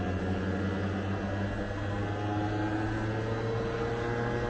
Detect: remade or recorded recorded